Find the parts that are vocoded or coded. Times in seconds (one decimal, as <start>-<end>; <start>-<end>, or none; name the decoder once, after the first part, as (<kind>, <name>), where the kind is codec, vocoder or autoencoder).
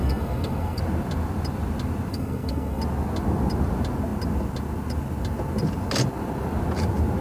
0.0-0.8 (codec, SNAC); 2.1-2.8